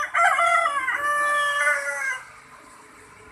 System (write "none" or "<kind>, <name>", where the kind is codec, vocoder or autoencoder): none